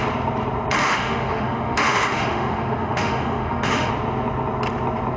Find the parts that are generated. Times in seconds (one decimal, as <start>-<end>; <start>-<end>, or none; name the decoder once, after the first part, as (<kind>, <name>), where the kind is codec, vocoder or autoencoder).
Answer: 0.8-3.9 (autoencoder, DAC-VAE)